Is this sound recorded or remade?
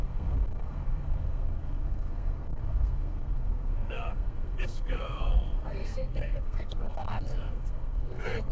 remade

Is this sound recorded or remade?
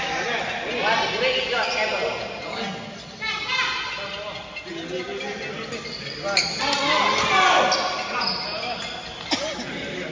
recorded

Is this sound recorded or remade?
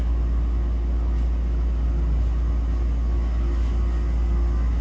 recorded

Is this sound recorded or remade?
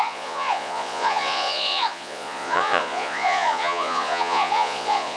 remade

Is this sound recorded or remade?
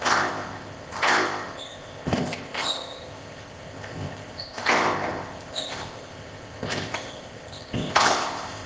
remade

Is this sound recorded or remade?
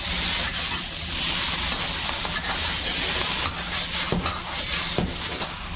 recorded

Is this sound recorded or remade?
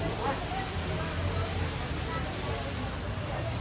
recorded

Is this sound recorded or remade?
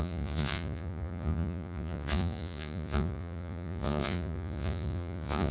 remade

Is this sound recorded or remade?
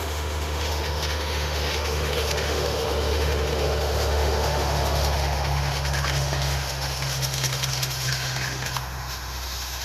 remade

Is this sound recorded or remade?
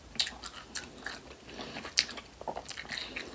recorded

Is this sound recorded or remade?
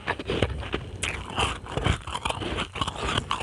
recorded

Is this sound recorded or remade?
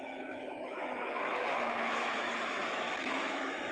remade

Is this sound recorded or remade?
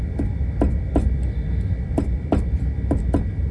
recorded